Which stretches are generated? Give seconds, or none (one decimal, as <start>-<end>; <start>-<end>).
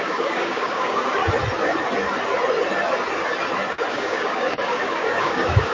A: 0.0-1.2; 3.9-5.7